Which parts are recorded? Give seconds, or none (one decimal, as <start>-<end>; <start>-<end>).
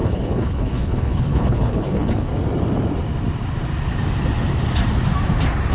2.3-5.7